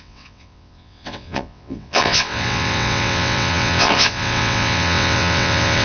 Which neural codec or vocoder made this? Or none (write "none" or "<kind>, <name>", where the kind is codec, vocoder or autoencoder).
vocoder, WaveNeXt